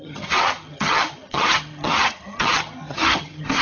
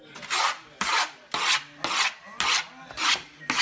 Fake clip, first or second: first